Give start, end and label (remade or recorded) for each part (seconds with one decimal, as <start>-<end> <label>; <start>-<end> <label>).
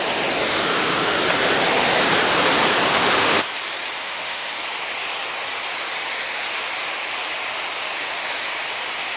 0.0-0.5 recorded; 0.5-1.2 remade; 1.2-2.9 recorded; 2.9-3.5 remade; 3.5-4.0 recorded; 4.0-4.6 remade; 4.6-9.2 recorded